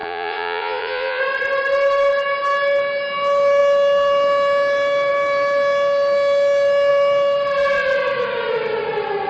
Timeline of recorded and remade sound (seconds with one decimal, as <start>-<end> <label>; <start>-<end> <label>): 0.0-1.2 remade; 1.2-9.3 recorded